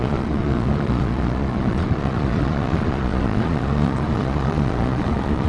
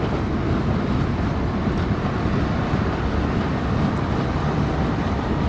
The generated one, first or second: first